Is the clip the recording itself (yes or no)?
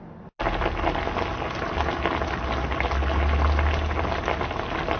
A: yes